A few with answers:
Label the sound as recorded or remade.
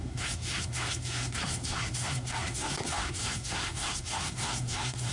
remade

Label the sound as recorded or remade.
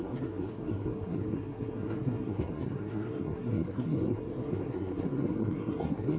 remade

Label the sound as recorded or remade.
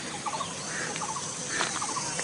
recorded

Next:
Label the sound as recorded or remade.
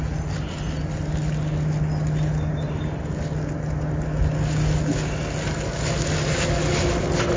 recorded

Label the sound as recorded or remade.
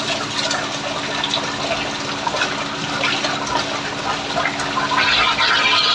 recorded